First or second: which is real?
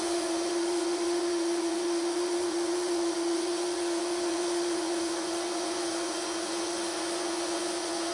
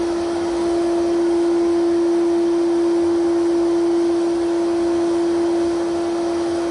second